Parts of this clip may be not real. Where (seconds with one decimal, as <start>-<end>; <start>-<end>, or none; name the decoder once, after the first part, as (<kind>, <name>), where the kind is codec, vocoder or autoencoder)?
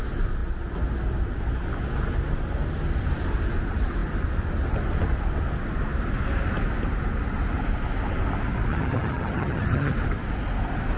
8.7-9.9 (vocoder, HiFi-GAN)